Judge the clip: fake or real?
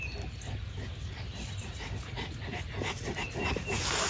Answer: real